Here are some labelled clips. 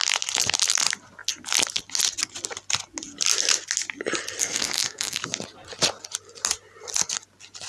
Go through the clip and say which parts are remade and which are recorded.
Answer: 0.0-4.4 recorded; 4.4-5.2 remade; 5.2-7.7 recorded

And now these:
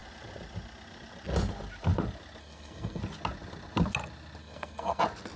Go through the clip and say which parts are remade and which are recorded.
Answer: 0.0-2.4 recorded; 2.4-3.0 remade; 3.0-4.4 recorded; 4.4-5.0 remade; 5.0-5.4 recorded

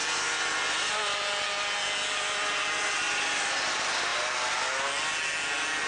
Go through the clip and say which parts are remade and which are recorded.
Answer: 0.0-5.9 recorded

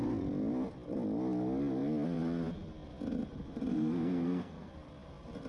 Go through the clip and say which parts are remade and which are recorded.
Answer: 0.0-3.7 recorded; 3.7-4.7 remade; 4.7-5.5 recorded

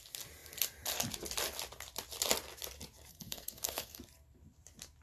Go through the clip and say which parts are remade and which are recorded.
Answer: 0.0-3.1 recorded; 3.1-4.0 remade; 4.0-5.0 recorded

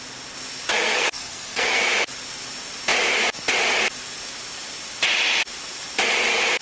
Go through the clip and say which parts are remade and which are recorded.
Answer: 0.0-0.7 recorded; 0.7-1.8 remade; 1.8-6.6 recorded

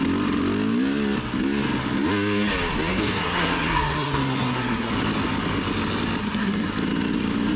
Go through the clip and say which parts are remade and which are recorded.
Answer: 0.0-2.9 recorded; 2.9-4.9 remade; 4.9-6.2 recorded; 6.2-6.7 remade; 6.7-7.6 recorded

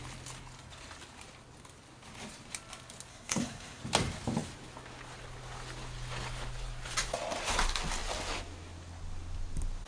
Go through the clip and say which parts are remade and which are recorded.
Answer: 0.0-3.1 recorded; 3.1-3.8 remade; 3.8-9.9 recorded